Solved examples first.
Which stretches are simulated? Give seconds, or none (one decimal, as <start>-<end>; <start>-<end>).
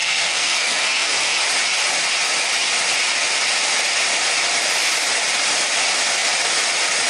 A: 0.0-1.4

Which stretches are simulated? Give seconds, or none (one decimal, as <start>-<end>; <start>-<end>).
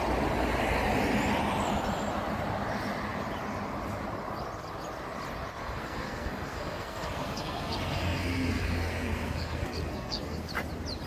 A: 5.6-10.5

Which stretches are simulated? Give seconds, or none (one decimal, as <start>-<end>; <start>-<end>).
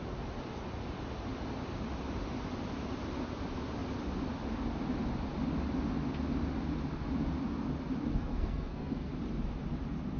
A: 8.1-9.1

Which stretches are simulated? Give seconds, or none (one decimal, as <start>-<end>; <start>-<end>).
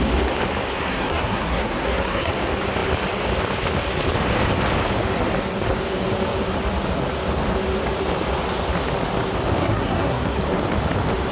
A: 0.7-2.3; 9.6-10.4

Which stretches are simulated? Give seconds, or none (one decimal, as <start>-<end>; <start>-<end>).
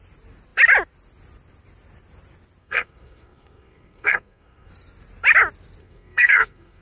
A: 2.6-4.7; 5.8-6.8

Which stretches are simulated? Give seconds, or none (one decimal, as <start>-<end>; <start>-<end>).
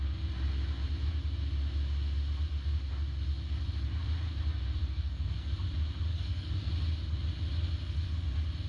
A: 4.8-5.5; 6.1-6.7